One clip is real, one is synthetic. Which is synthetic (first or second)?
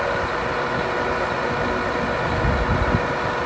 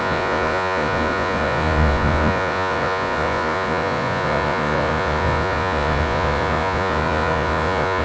second